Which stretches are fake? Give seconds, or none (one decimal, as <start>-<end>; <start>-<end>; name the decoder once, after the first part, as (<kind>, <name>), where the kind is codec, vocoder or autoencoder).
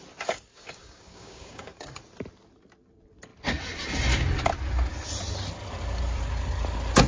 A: 0.5-2.0 (codec, DAC)